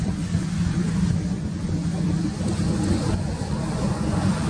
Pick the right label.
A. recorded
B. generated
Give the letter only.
B